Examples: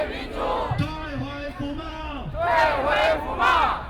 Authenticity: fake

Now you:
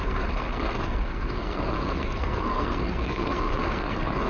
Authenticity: fake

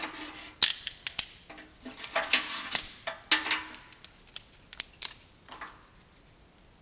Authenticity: real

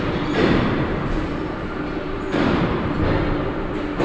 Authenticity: fake